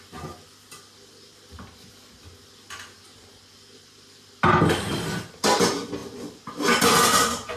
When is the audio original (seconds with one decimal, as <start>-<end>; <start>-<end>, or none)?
0.0-7.6